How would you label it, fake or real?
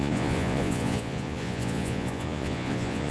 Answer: fake